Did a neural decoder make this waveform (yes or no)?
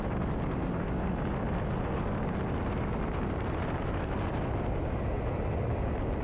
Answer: no